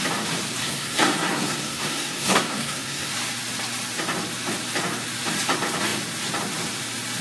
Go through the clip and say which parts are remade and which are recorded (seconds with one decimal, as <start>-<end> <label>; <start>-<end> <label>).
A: 0.0-0.6 recorded; 0.6-3.1 remade; 3.1-7.2 recorded